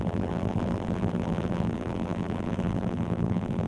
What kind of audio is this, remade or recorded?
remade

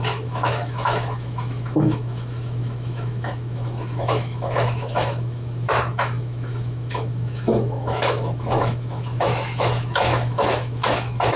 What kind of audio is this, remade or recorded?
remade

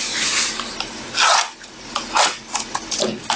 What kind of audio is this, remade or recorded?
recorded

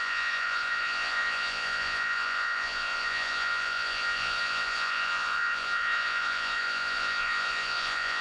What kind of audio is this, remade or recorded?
remade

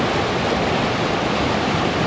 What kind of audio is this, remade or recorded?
recorded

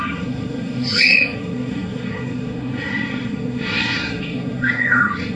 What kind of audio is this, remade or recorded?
remade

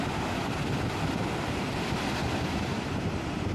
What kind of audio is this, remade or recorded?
recorded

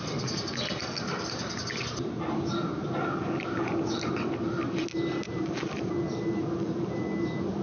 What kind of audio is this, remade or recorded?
recorded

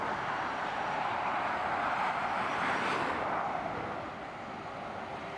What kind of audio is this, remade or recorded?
recorded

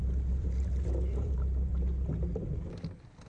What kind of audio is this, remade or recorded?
recorded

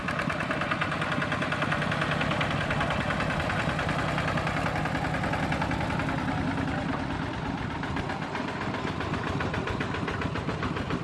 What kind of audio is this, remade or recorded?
recorded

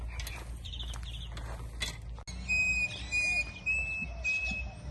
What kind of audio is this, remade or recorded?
recorded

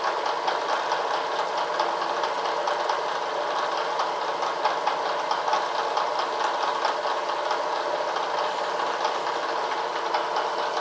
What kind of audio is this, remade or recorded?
recorded